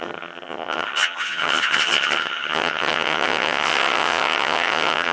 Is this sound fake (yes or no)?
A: yes